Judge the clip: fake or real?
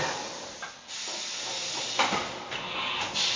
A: real